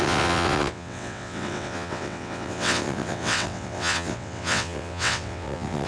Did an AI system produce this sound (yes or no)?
yes